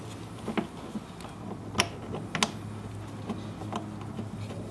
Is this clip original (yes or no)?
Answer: yes